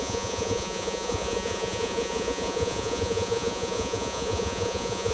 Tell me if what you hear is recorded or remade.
remade